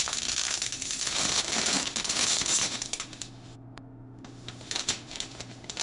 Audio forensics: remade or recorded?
remade